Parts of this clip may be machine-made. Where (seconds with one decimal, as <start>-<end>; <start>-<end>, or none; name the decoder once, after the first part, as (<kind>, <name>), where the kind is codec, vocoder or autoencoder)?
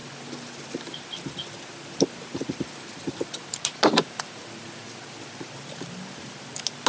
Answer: none